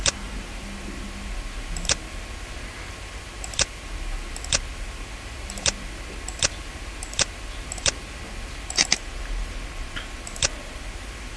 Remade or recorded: recorded